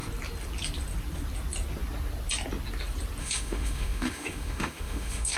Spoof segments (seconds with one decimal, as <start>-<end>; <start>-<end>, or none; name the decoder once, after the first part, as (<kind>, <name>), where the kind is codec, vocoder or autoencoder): 3.2-5.4 (autoencoder, DAC-VAE)

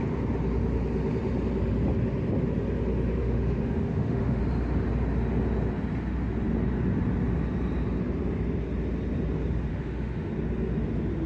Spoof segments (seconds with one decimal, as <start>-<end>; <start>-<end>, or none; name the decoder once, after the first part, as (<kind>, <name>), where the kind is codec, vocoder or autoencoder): 3.2-4.4 (autoencoder, DAC-VAE); 9.7-10.3